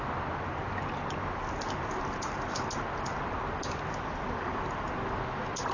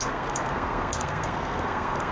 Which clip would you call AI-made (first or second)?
second